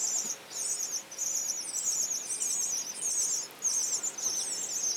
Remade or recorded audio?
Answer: recorded